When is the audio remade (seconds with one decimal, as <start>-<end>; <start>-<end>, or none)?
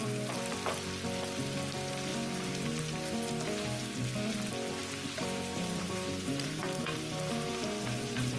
4.8-8.4